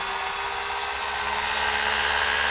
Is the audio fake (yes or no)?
no